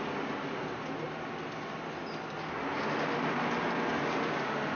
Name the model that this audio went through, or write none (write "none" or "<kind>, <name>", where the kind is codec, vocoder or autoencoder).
none